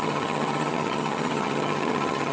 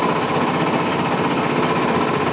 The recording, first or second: second